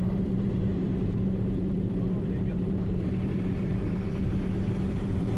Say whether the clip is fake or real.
fake